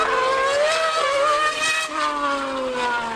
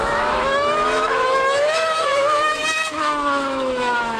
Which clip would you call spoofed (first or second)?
second